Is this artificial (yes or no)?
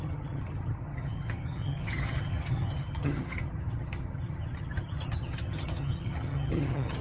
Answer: yes